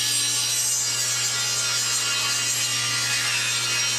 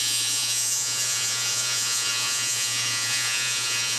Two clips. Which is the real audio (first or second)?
first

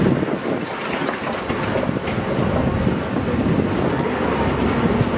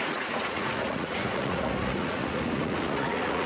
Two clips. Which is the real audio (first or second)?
first